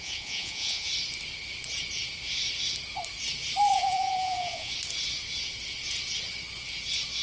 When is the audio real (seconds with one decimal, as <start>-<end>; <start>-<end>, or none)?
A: 0.9-3.7; 4.7-7.2